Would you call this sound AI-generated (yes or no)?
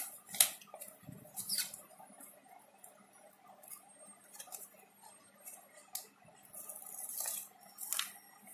no